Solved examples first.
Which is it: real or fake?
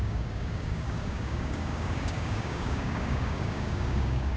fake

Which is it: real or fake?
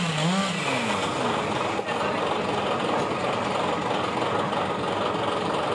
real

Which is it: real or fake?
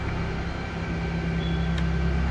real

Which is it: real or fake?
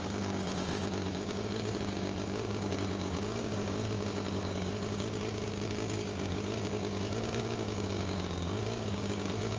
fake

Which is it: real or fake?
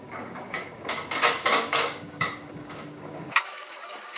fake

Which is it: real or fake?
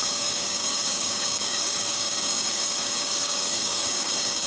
fake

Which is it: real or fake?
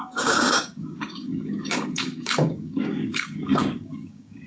fake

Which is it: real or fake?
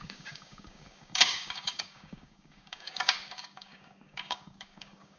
fake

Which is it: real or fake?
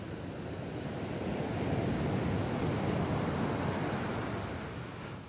real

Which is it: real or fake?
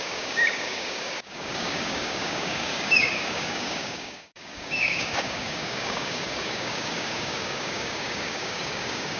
fake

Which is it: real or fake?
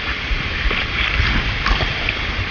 real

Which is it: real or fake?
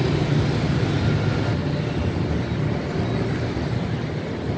real